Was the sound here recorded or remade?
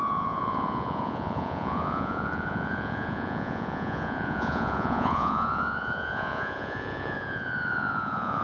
remade